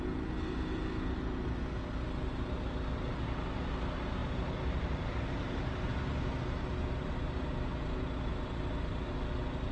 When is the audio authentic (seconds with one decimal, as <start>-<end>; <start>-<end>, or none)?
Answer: 0.0-4.2; 5.9-8.3; 9.1-9.7